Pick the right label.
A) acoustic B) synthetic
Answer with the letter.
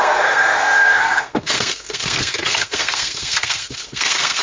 B